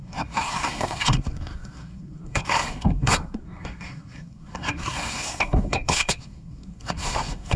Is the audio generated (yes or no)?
yes